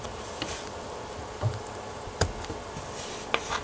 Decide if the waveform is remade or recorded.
recorded